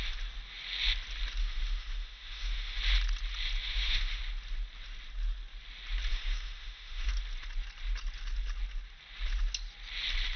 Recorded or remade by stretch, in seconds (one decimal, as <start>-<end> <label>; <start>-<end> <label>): 0.0-1.4 recorded; 1.4-2.8 remade; 2.8-3.6 recorded; 3.6-4.2 remade; 4.2-6.1 recorded; 6.1-7.1 remade; 7.1-10.4 recorded